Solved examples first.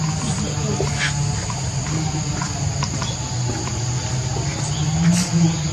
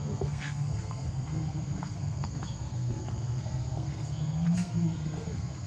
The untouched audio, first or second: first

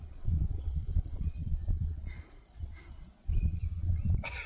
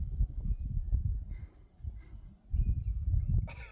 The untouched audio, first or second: second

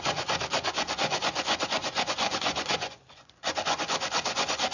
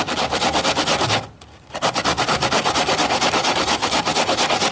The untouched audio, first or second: second